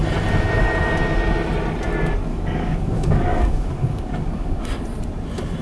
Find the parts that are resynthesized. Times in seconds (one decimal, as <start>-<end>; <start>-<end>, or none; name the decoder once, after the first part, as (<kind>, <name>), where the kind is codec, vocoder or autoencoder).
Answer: 2.3-4.6 (codec, DAC)